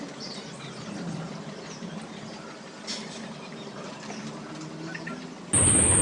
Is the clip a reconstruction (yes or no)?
no